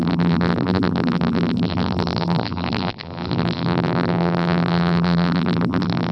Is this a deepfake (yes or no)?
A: yes